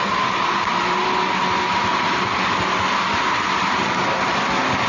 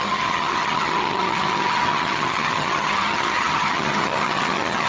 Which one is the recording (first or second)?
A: first